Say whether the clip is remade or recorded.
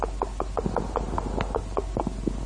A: recorded